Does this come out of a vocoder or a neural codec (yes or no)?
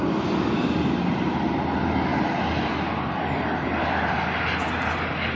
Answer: no